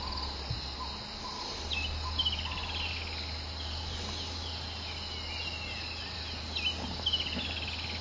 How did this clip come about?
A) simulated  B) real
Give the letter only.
B